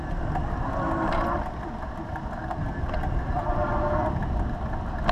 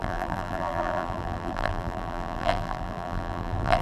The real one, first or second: first